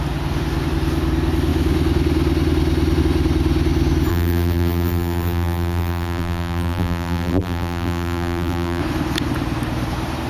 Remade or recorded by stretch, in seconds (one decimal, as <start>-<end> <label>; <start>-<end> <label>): 0.0-4.1 recorded; 4.1-8.8 remade; 8.8-10.3 recorded